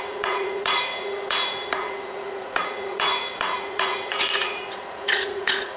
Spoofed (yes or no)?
yes